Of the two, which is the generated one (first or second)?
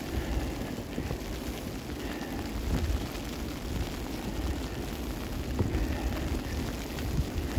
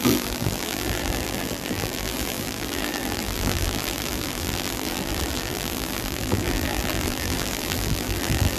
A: second